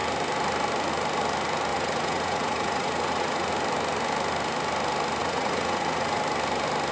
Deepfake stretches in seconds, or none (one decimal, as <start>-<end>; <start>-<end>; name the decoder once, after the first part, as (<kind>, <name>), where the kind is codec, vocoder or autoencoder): 1.7-3.5 (vocoder, Vocos); 5.2-6.2